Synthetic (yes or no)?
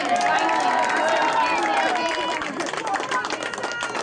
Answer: no